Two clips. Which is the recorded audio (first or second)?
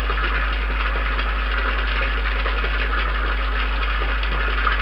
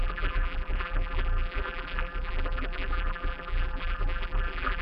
first